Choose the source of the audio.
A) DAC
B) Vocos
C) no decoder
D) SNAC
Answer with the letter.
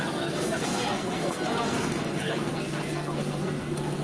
D